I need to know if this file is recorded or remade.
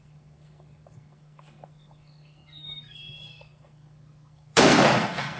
remade